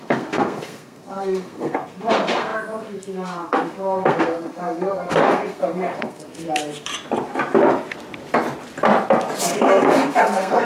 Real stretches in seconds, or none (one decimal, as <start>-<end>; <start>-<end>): 6.9-9.4